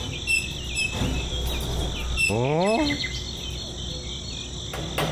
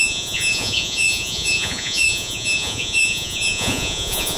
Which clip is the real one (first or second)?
first